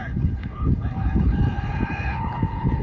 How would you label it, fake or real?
fake